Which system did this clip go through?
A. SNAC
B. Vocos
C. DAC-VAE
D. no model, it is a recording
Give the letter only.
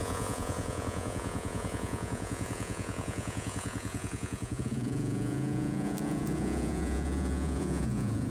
B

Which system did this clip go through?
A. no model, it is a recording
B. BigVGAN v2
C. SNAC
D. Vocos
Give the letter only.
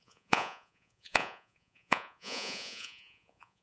D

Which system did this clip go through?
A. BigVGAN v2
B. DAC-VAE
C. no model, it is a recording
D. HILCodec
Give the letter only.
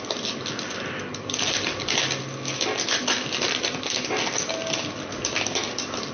C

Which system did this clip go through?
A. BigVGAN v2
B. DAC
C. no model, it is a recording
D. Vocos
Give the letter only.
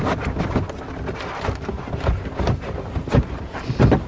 C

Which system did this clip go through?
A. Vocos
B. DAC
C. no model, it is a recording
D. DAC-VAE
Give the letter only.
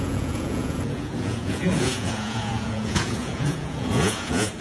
A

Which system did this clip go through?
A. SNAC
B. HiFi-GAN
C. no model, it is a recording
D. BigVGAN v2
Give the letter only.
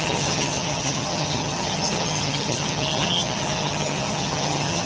B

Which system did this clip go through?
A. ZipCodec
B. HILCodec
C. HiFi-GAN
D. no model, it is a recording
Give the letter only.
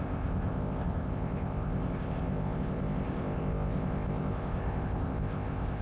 A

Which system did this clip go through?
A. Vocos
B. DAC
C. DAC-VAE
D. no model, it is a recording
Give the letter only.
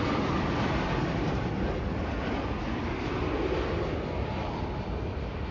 D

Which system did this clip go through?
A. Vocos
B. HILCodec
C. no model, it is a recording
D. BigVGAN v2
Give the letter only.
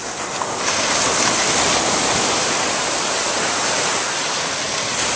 C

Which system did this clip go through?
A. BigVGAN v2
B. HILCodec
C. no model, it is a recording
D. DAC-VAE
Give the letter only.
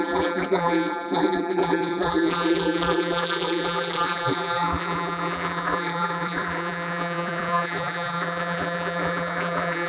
A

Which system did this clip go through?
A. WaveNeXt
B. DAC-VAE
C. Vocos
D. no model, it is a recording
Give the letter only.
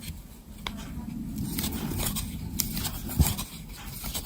D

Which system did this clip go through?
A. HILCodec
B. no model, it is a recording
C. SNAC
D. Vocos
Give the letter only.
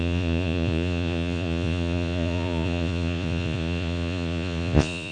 D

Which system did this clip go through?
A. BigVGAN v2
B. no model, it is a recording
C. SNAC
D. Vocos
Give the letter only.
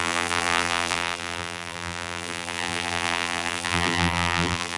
A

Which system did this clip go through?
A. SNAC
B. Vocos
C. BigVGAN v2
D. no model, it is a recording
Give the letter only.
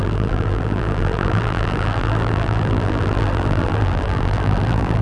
C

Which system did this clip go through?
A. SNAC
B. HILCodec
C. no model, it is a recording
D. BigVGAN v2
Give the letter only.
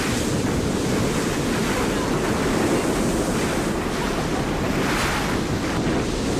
C